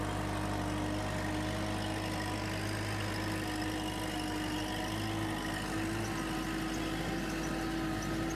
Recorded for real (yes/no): yes